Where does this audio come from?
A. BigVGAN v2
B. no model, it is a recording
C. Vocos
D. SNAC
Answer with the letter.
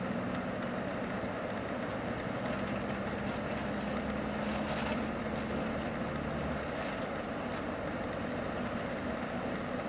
B